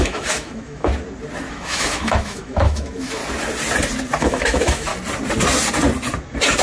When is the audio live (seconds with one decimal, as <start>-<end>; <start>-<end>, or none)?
0.9-1.5; 3.2-4.2; 4.9-6.6